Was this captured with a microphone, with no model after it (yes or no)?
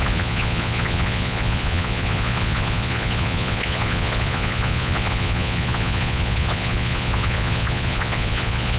no